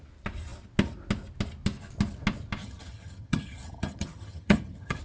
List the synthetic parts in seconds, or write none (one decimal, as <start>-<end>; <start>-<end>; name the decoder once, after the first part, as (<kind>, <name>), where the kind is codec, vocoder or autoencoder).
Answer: 2.6-5.0 (vocoder, HiFi-GAN)